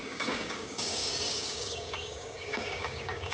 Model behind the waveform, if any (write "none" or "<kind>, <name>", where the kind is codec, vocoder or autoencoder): codec, DAC